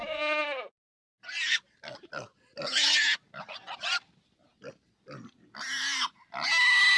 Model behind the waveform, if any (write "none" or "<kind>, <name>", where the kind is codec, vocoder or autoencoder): none